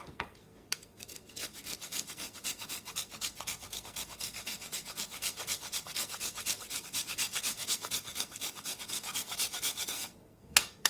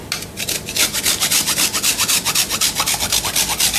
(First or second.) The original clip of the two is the second